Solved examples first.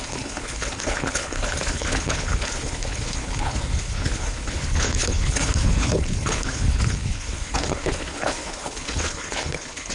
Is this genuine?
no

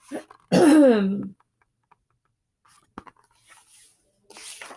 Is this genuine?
yes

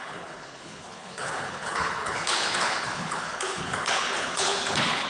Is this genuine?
no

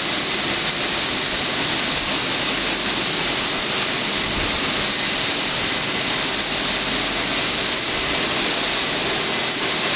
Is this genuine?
yes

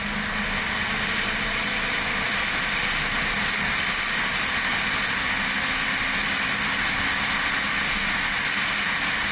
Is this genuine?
yes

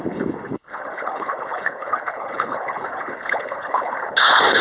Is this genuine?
no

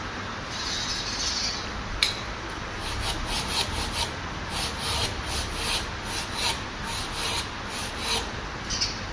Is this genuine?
yes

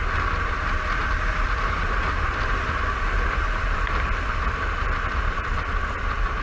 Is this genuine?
yes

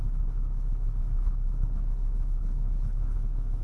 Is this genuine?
no